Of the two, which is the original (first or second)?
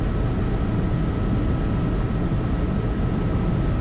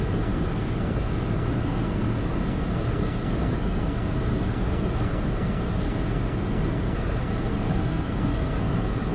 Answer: first